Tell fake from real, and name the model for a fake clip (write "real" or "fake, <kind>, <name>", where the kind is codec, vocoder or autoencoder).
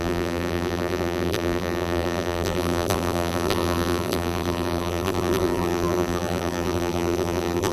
fake, vocoder, BigVGAN v2